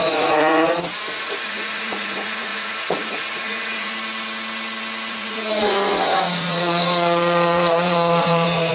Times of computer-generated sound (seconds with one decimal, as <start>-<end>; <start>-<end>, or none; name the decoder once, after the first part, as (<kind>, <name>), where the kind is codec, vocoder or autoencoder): 0.0-3.9 (vocoder, Vocos); 5.1-8.7